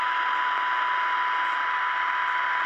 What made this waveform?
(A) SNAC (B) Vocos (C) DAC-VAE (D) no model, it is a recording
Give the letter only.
D